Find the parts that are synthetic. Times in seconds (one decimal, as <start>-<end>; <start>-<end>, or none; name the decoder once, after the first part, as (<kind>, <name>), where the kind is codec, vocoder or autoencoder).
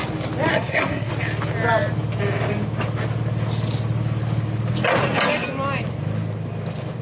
0.5-1.1 (codec, SNAC)